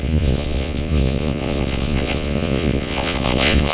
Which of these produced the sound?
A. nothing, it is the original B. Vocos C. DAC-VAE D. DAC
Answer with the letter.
B